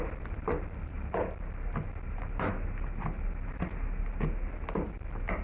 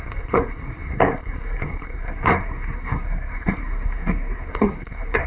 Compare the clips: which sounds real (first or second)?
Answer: first